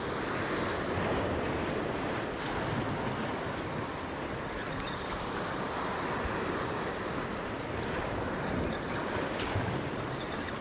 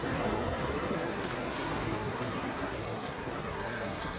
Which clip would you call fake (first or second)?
second